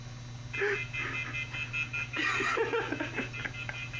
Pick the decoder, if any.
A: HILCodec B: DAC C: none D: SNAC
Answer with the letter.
C